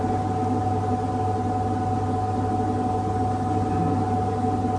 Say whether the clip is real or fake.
real